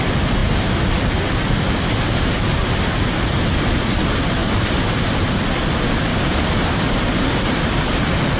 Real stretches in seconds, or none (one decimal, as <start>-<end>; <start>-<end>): 0.0-4.4; 5.0-6.1; 7.5-8.4